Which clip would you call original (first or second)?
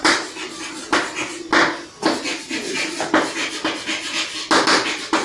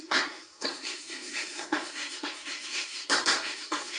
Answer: first